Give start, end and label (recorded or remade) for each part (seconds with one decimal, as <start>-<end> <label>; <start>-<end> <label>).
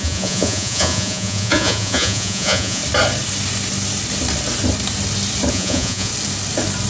0.0-2.8 remade; 2.8-5.5 recorded; 5.5-6.1 remade; 6.1-6.9 recorded